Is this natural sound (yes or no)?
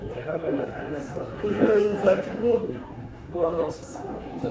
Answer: no